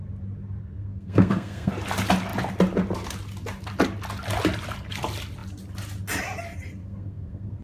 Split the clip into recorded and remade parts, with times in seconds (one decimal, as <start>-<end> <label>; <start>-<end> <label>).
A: 0.0-0.6 recorded; 0.6-1.7 remade; 1.7-6.8 recorded; 6.8-7.6 remade